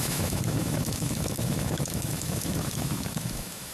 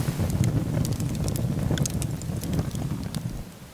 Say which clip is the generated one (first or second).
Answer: first